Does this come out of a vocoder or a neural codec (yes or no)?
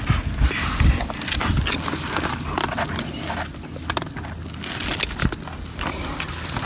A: no